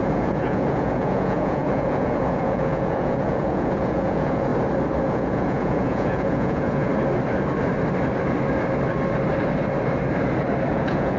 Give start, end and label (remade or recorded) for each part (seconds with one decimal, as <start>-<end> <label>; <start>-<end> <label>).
0.0-4.5 remade; 4.5-5.0 recorded; 5.0-6.9 remade; 6.9-10.7 recorded; 10.7-11.2 remade